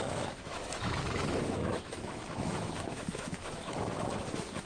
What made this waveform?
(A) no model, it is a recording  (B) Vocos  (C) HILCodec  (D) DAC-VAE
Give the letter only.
D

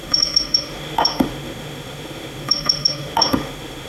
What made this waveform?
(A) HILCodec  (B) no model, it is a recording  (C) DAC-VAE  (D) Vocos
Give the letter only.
C